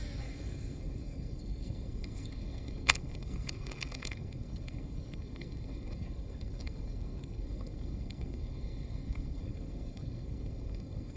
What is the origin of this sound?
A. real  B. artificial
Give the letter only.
B